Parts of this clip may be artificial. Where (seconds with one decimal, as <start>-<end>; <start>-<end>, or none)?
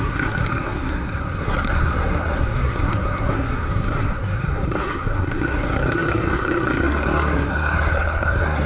0.0-8.7